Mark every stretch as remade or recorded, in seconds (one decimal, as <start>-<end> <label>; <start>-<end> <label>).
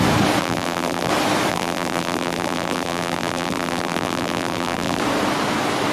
0.0-0.4 recorded; 0.4-1.1 remade; 1.1-1.5 recorded; 1.5-5.0 remade; 5.0-5.9 recorded